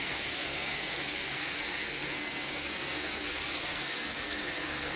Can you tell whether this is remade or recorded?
remade